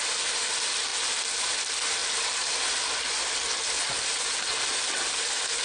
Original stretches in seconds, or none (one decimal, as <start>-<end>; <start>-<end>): 0.0-5.6